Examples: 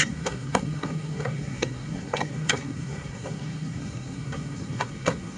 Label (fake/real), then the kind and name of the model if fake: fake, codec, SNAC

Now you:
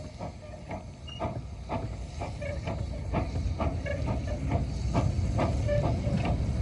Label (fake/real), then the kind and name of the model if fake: real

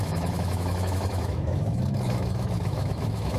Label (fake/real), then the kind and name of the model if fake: fake, autoencoder, DAC-VAE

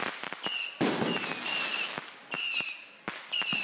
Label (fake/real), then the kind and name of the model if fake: real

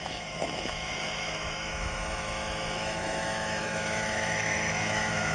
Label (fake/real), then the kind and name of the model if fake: fake, autoencoder, DAC-VAE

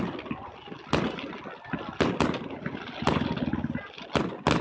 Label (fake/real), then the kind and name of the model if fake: real